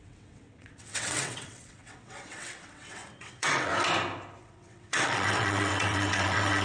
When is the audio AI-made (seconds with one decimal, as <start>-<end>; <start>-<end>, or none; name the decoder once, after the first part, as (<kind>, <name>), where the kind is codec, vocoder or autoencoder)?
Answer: 0.0-3.7 (vocoder, WaveNeXt); 4.4-6.6